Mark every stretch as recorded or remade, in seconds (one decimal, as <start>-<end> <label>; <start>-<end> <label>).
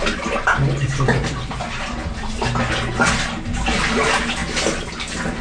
0.0-5.4 recorded